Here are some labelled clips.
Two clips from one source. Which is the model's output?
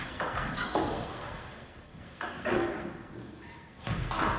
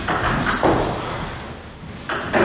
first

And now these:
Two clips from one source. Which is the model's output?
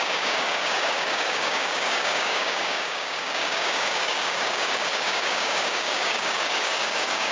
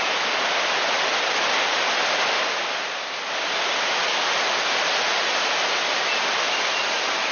first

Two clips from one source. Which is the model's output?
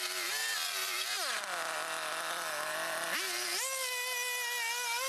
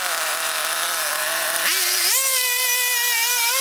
second